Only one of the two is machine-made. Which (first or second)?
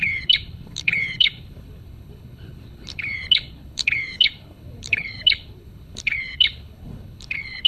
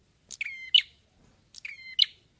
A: first